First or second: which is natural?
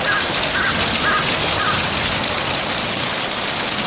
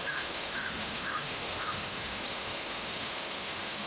first